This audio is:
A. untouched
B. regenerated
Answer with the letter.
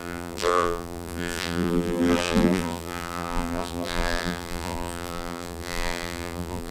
B